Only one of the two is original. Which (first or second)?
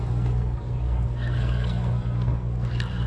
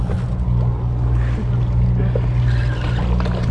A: second